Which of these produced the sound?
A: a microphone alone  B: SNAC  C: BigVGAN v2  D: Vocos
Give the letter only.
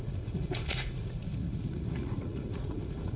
D